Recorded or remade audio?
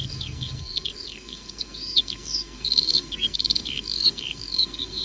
remade